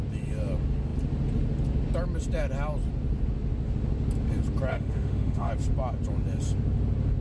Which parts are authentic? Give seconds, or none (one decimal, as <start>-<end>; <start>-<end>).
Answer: 0.0-4.7; 5.5-7.2